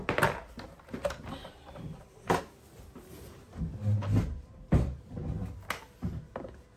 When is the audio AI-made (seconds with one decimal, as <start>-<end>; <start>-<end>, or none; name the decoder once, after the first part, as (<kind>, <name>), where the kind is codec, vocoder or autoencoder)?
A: 1.4-2.4 (vocoder, BigVGAN v2); 3.1-3.6